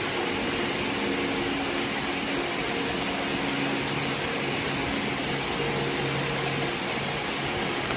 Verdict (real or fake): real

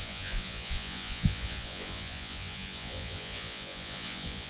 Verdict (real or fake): fake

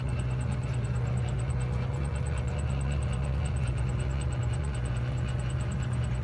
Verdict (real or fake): fake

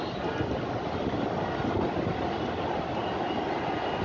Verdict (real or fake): real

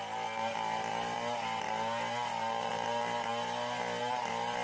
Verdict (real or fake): real